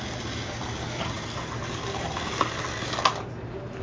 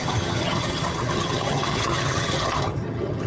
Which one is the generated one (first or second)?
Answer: second